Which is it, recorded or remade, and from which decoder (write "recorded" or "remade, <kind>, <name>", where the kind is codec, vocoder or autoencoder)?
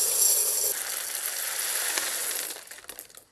recorded